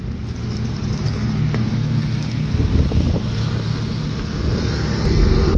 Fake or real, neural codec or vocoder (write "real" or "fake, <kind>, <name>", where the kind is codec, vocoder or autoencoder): real